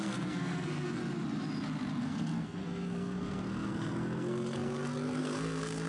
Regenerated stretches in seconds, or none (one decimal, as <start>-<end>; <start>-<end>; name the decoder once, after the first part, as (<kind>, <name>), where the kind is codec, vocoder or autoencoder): 0.0-1.0 (codec, SNAC); 2.0-5.9